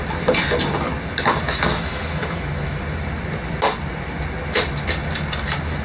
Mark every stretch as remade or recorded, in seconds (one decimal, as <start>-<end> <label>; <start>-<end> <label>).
0.0-1.7 recorded; 1.7-2.8 remade; 2.8-5.8 recorded